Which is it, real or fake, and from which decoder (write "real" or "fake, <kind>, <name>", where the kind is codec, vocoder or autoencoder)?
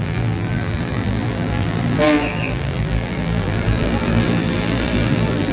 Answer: fake, vocoder, BigVGAN v2